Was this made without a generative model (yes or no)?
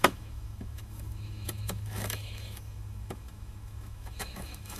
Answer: no